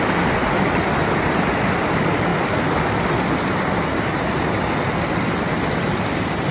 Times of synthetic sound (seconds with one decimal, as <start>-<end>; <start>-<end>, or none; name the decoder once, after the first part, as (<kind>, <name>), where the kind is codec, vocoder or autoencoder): none